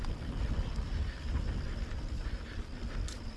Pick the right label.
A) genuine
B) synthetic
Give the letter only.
A